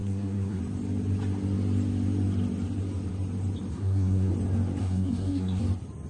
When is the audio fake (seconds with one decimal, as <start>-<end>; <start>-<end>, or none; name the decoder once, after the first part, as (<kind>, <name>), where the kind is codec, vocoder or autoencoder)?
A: 0.0-0.6 (codec, SNAC); 3.7-4.3; 4.8-5.6